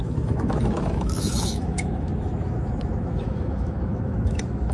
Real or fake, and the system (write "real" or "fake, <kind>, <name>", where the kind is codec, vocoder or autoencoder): fake, autoencoder, DAC-VAE